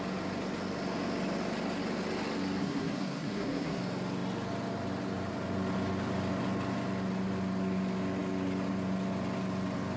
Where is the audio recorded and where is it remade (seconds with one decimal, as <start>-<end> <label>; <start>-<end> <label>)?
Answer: 0.0-2.6 recorded; 2.6-3.8 remade; 3.8-10.0 recorded